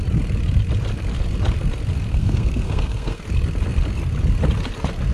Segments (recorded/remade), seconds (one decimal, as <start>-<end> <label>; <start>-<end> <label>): 0.0-2.1 recorded; 2.1-3.2 remade; 3.2-5.1 recorded